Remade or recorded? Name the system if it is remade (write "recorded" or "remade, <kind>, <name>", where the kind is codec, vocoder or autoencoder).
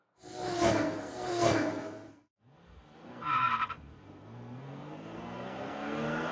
remade, codec, SNAC